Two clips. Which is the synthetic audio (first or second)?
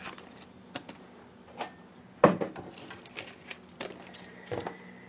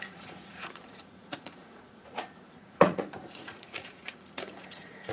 second